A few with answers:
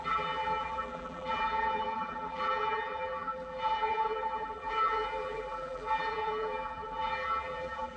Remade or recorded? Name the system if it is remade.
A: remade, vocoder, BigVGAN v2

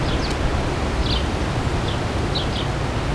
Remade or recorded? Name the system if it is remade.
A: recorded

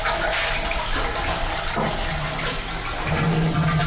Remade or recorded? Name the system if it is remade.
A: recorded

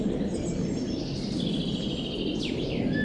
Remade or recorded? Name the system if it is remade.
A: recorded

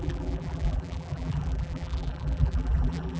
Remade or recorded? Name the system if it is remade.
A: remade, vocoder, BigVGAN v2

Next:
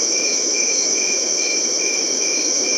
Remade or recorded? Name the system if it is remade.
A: remade, autoencoder, DAC-VAE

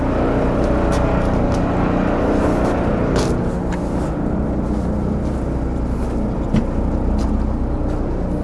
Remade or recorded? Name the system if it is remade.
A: recorded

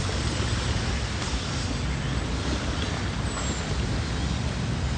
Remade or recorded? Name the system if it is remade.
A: recorded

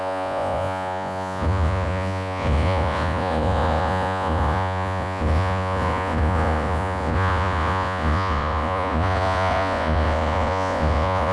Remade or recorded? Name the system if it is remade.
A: remade, vocoder, Vocos